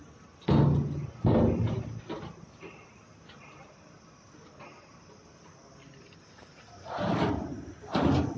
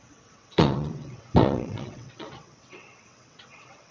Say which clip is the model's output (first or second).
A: second